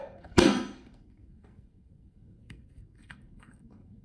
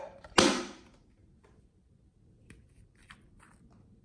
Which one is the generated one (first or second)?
first